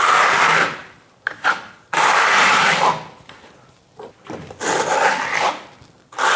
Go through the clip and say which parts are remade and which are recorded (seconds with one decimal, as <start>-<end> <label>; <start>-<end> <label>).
0.0-0.8 recorded; 0.8-4.6 remade; 4.6-6.4 recorded